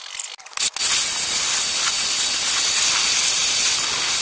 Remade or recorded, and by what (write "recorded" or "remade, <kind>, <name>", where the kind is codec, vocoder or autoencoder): recorded